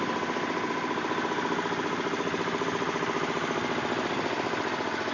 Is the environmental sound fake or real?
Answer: real